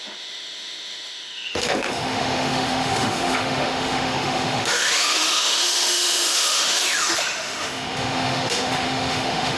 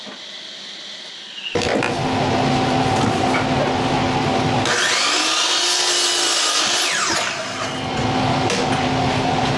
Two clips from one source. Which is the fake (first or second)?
first